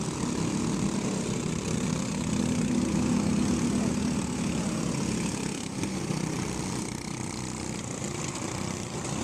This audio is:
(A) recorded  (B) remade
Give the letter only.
A